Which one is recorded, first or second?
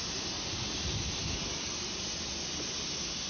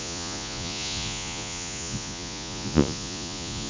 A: first